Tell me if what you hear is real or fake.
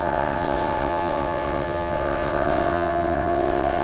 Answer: fake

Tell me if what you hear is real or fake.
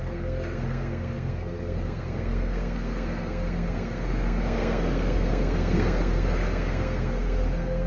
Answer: fake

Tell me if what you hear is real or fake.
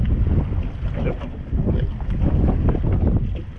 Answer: real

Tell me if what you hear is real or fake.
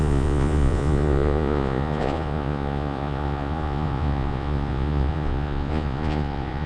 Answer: fake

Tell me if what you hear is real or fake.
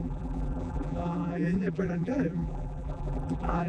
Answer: fake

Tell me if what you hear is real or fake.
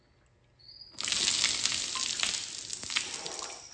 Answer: real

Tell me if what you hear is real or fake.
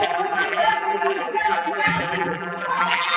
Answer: fake